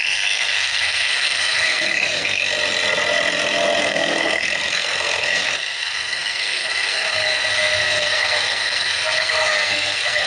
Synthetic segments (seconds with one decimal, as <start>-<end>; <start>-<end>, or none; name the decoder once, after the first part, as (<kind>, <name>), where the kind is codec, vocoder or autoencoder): 0.0-2.4 (codec, SNAC); 3.8-10.3